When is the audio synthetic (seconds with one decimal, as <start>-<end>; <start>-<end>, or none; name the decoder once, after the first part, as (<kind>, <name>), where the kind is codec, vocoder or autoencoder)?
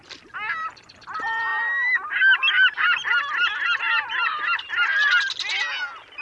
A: none